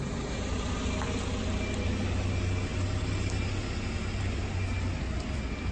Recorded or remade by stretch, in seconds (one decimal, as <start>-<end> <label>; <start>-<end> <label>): 0.0-5.7 recorded